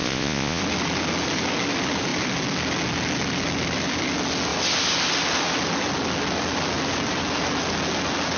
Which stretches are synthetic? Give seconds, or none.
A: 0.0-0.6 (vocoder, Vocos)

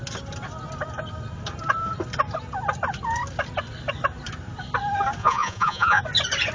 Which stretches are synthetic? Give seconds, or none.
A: 5.2-6.0 (vocoder, Vocos)

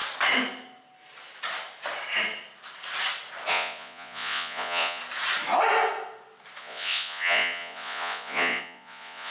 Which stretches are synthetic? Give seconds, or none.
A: 3.5-5.0 (vocoder, Vocos); 6.6-9.3

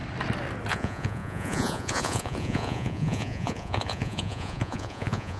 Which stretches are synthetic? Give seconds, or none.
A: 0.7-5.4 (vocoder, Vocos)

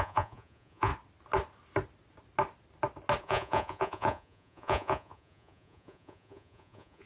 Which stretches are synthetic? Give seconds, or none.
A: 0.0-0.9 (vocoder, Vocos); 3.2-7.1

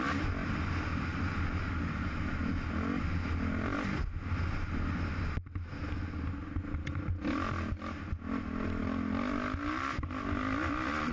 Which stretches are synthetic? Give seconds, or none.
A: none

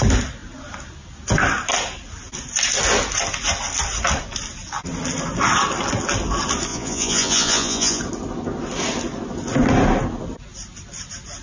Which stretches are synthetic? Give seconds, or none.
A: 6.7-8.0 (vocoder, Vocos)

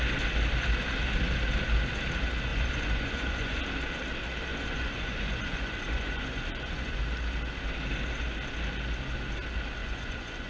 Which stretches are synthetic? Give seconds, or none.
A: 2.5-3.6 (vocoder, Vocos); 4.5-7.0; 9.8-10.5